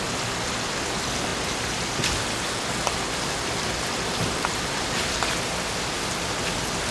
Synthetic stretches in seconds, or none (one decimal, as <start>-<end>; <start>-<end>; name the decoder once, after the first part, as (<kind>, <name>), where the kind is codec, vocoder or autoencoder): 1.3-5.4 (vocoder, BigVGAN v2)